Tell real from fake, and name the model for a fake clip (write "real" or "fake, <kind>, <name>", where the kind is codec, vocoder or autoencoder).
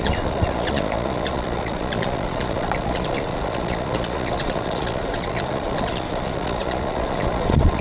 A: fake, vocoder, Vocos